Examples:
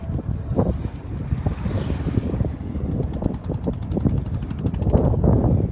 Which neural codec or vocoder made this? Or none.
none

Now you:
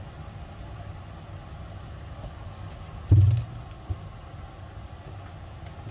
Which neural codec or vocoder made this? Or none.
none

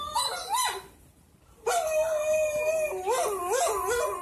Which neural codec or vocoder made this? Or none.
none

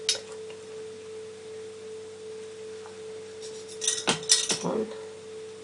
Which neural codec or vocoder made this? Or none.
none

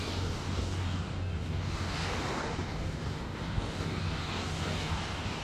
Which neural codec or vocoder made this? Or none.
codec, DAC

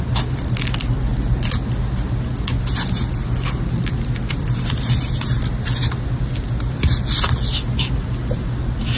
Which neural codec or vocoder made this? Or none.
none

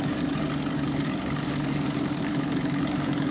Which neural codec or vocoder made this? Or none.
codec, DAC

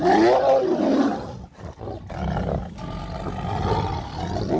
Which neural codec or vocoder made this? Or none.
none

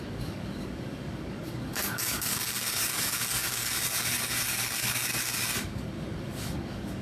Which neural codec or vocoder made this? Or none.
codec, DAC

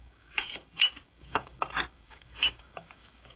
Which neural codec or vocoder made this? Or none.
codec, DAC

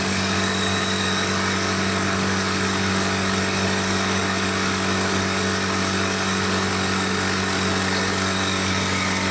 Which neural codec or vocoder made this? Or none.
codec, DAC